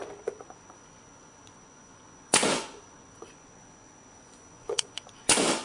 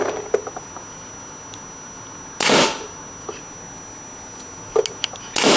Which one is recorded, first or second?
second